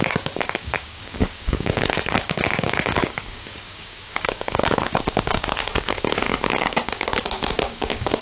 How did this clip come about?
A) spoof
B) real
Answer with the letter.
A